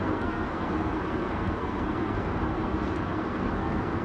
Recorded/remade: remade